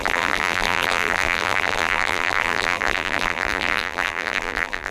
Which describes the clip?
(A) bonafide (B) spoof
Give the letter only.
B